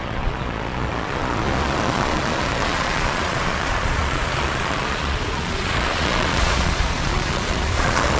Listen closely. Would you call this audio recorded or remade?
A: remade